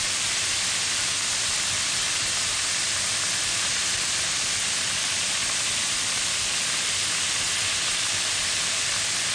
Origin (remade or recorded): remade